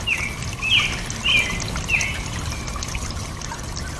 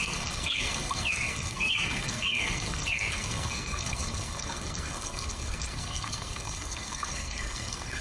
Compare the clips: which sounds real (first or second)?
first